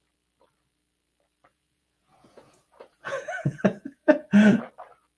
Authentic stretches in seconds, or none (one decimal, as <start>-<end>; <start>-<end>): 0.0-1.5; 4.6-5.2